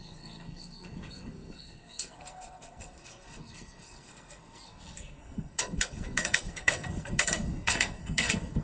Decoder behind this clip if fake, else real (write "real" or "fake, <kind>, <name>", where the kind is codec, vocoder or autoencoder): fake, codec, SNAC